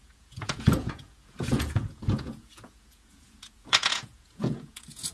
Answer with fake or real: fake